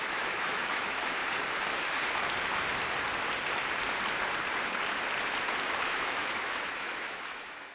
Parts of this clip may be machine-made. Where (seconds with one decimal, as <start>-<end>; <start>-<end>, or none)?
0.0-1.2; 5.8-7.7